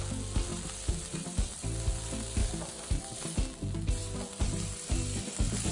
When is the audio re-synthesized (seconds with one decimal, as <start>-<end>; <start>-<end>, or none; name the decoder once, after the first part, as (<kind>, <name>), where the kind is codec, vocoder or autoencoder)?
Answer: 0.5-1.8 (vocoder, BigVGAN v2); 2.4-3.0; 4.0-5.2